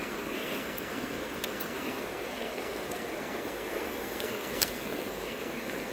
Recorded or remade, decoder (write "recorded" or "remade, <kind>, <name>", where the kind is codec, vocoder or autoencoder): remade, codec, SNAC